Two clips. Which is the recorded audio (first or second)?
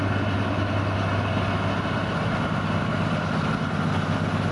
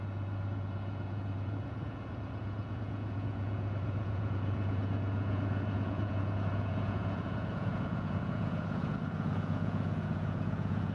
first